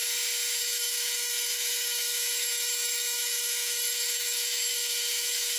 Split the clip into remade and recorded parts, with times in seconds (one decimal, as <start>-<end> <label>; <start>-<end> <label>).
0.0-0.6 recorded; 0.6-5.6 remade